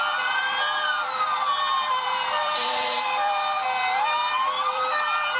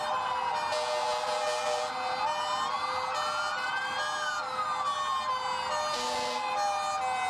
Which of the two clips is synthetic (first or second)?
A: first